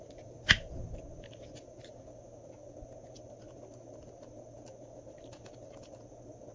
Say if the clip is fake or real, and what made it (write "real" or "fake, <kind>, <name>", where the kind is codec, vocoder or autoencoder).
real